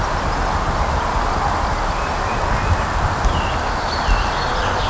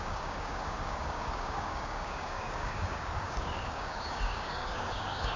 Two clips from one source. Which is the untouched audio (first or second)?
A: first